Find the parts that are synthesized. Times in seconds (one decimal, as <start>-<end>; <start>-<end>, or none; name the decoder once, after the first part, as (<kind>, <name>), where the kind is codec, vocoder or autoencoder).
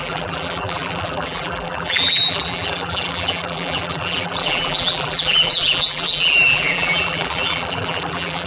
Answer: 0.0-8.5 (vocoder, BigVGAN v2)